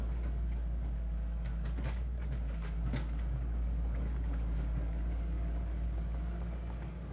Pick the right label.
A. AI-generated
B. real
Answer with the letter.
A